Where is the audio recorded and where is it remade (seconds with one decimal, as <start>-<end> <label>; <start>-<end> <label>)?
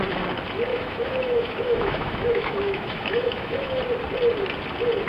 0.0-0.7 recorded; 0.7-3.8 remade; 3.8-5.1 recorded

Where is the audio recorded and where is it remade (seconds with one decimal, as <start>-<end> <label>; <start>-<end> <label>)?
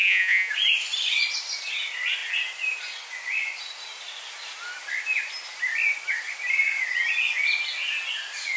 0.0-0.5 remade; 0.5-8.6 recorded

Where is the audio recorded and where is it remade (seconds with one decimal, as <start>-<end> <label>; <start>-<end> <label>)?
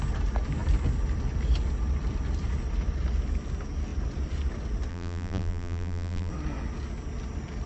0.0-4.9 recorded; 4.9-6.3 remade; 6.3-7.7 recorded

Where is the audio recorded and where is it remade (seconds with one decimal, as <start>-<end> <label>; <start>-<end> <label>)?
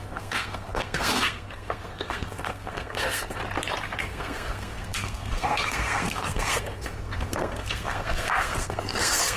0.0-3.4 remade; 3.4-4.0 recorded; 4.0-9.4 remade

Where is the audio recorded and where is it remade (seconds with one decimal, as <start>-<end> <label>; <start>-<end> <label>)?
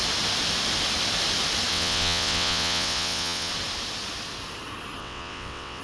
0.0-1.7 recorded; 1.7-3.5 remade; 3.5-5.0 recorded; 5.0-5.8 remade